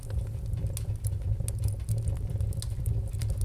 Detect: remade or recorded recorded